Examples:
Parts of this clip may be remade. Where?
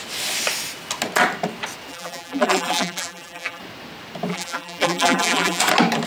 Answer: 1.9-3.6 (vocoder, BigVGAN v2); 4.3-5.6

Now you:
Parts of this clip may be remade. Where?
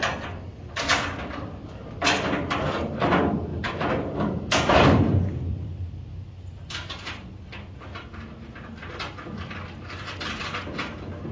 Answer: 0.5-10.4 (vocoder, BigVGAN v2)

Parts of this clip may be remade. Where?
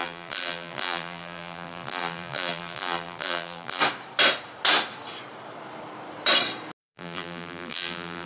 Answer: 0.0-3.8 (vocoder, BigVGAN v2); 6.8-8.2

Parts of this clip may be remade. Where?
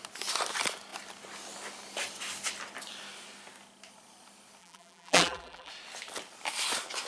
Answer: 4.6-5.7 (vocoder, BigVGAN v2)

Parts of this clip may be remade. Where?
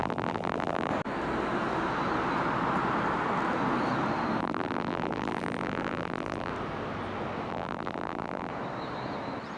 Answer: 0.0-0.9 (vocoder, BigVGAN v2); 4.4-6.5; 7.5-8.5